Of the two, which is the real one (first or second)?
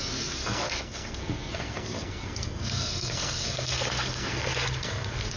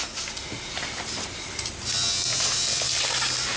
second